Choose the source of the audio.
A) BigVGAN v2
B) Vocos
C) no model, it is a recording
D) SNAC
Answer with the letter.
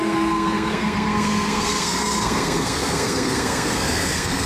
D